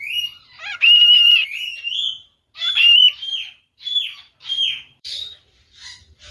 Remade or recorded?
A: remade